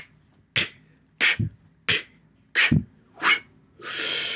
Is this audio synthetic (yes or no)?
no